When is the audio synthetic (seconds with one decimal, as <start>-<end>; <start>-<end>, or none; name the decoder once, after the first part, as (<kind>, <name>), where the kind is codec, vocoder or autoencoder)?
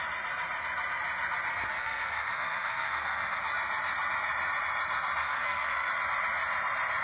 1.7-3.4 (codec, SNAC); 5.2-5.9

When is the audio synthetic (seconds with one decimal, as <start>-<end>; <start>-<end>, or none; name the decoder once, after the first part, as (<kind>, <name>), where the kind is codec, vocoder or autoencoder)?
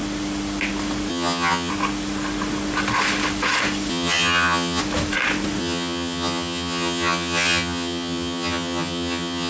1.1-1.7 (vocoder, HiFi-GAN); 3.9-4.8; 5.6-9.5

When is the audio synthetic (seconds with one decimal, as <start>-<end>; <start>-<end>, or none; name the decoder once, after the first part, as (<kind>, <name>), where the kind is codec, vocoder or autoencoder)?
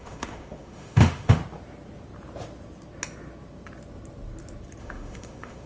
0.0-1.4 (autoencoder, DAC-VAE); 4.8-5.7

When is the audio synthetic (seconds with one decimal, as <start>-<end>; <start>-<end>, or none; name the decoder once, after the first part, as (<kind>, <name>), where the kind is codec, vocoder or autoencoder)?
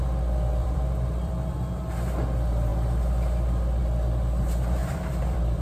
0.6-1.9 (vocoder, BigVGAN v2); 4.8-5.6